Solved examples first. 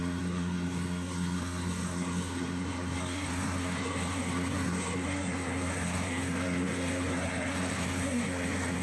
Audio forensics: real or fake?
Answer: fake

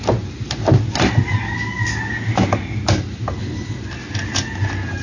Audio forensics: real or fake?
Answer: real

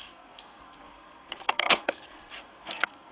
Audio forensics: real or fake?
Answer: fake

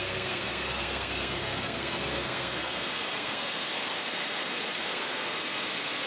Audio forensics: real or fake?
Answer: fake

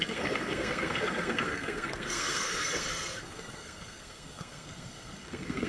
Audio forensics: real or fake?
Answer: fake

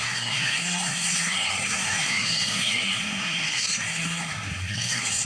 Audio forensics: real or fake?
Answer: fake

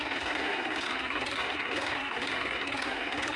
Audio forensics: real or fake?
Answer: fake